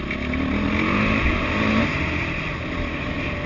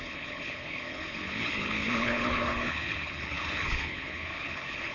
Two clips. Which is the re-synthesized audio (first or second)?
second